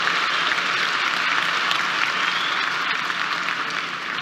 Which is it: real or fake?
real